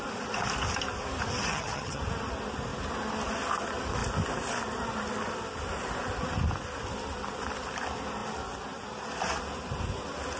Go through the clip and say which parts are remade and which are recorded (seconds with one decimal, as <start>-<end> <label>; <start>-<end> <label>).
0.0-1.5 recorded; 1.5-2.0 remade; 2.0-10.4 recorded